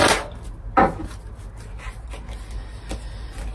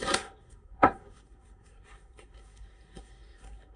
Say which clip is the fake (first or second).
second